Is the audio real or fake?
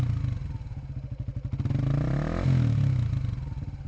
real